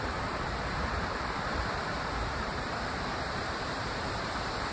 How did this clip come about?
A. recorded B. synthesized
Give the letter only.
B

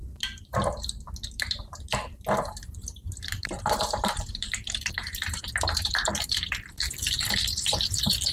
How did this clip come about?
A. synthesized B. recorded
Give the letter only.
A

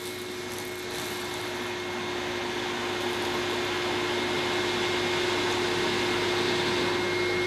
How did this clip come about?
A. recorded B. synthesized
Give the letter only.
A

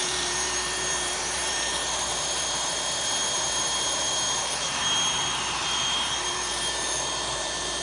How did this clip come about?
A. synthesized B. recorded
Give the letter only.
A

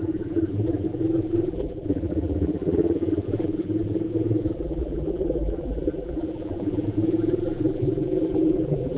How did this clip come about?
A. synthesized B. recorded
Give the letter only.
A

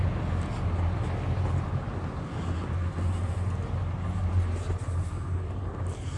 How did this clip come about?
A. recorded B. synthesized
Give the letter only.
A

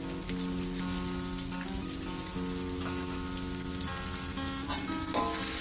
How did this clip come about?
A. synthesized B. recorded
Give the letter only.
B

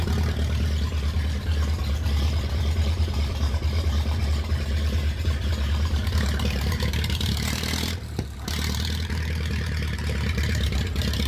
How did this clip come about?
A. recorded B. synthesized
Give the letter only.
B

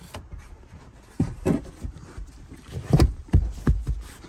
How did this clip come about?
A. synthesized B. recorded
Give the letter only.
B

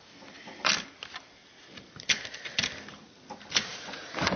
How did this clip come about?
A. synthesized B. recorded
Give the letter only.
B